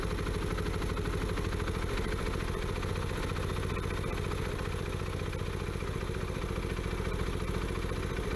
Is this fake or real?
real